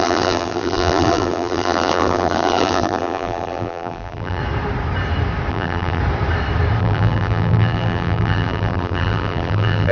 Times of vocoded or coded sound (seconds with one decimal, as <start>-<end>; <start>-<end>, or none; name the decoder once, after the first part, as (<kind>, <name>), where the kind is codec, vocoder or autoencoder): 0.0-4.4 (vocoder, BigVGAN v2); 5.5-6.0; 6.8-9.9